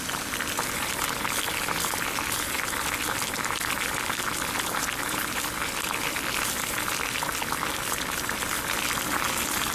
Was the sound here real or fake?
real